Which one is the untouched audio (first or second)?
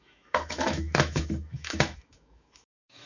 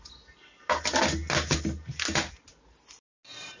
second